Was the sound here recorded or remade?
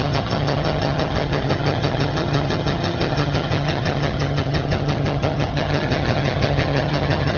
remade